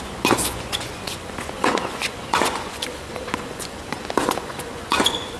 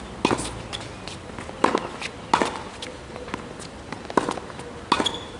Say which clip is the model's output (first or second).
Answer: first